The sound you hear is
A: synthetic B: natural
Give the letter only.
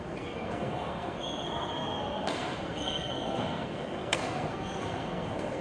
A